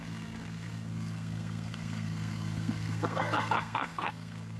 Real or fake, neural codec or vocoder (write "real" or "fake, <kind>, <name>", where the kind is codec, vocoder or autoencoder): fake, codec, SNAC